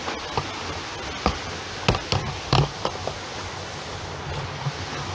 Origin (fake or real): real